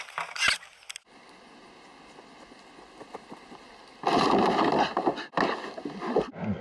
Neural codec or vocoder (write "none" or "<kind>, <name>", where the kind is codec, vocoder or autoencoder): none